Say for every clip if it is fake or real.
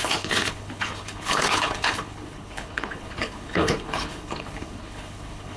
fake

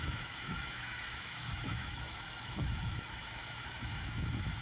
fake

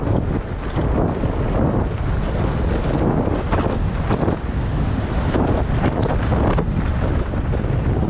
real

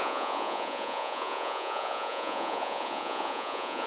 fake